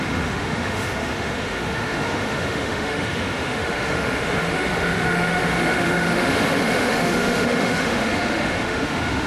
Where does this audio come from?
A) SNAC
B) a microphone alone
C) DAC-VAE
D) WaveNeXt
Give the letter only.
C